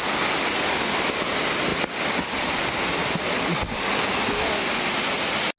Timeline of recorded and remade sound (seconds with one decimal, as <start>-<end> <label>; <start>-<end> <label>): 0.0-5.6 recorded